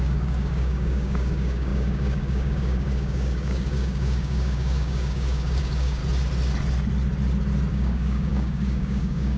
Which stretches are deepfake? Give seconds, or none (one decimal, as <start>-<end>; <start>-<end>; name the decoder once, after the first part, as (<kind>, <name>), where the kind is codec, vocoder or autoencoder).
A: 0.0-6.0 (codec, DAC); 7.7-9.4